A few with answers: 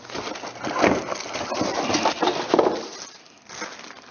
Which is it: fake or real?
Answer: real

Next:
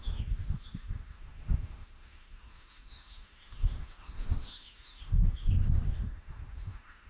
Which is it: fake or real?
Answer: fake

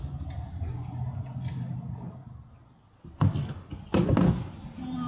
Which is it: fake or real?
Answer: real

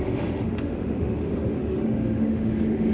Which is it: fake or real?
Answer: fake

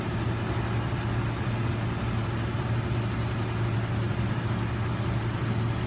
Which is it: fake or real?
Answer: real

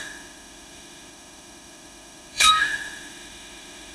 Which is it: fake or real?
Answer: fake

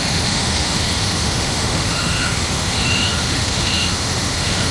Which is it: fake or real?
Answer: fake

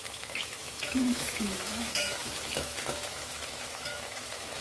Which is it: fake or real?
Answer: fake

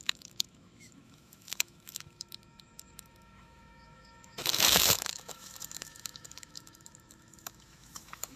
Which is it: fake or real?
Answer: fake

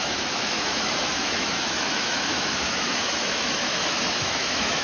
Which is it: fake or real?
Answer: fake